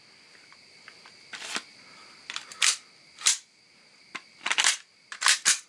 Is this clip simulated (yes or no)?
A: no